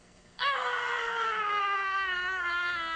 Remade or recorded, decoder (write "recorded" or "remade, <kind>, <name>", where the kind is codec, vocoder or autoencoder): remade, codec, SNAC